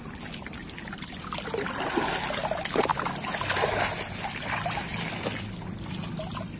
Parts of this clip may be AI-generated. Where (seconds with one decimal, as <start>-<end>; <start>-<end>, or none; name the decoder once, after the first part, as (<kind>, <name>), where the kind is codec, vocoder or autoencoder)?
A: 0.6-1.7 (vocoder, BigVGAN v2); 4.9-6.0